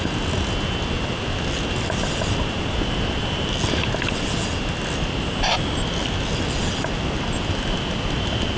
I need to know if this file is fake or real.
real